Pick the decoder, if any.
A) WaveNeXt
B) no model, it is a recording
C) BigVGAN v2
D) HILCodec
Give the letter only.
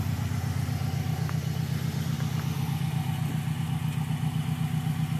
B